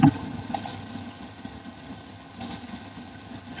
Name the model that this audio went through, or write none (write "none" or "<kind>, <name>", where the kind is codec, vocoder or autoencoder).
vocoder, HiFi-GAN